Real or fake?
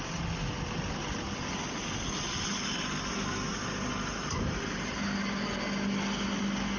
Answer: real